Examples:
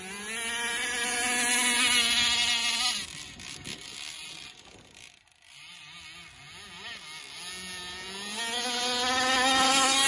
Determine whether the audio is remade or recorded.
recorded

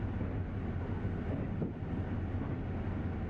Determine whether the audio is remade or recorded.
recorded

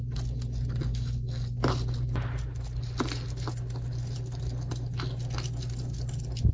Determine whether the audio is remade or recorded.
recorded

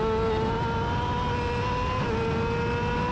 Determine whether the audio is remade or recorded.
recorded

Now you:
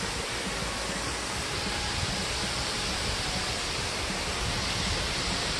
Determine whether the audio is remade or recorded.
recorded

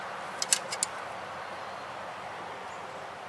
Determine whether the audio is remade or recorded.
recorded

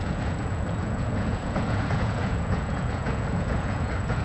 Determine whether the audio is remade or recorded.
remade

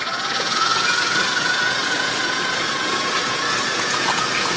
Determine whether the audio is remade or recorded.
remade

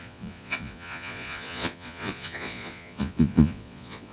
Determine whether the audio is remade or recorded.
remade